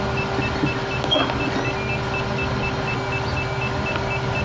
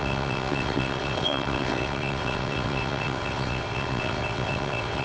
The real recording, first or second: first